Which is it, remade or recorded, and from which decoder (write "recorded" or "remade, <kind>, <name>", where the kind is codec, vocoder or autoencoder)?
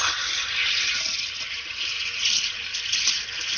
recorded